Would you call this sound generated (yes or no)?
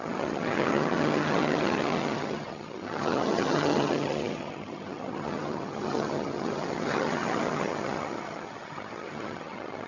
yes